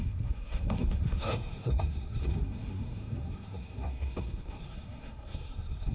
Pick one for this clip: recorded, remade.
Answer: remade